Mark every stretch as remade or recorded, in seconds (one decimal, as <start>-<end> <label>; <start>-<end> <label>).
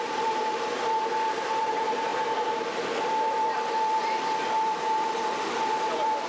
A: 0.0-6.3 remade